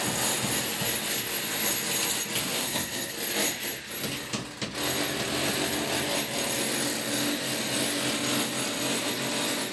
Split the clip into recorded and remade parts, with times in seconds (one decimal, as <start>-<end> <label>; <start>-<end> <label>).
0.0-2.4 recorded; 2.4-3.1 remade; 3.1-9.7 recorded